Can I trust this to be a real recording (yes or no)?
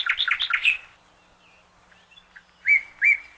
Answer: yes